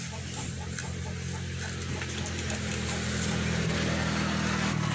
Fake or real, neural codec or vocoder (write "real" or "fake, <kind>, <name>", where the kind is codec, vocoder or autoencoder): real